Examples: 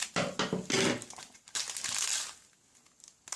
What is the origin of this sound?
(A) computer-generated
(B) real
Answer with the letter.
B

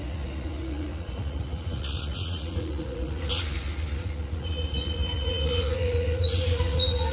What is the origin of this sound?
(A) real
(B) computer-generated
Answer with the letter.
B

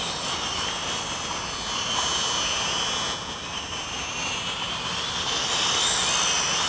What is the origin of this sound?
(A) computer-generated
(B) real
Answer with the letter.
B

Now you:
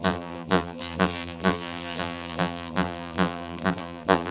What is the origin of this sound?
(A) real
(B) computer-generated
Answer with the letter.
B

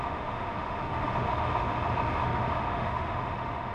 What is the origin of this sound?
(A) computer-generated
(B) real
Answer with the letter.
A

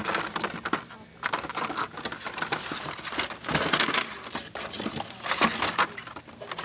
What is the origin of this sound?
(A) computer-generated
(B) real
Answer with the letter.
B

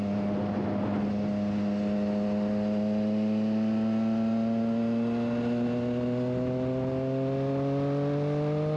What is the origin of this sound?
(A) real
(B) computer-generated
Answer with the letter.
A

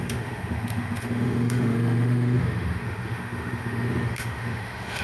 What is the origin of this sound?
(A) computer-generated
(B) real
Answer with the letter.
A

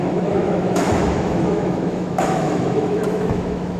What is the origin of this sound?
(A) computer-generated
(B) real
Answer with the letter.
A